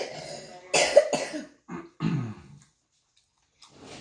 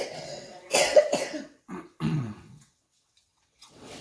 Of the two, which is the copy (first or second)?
second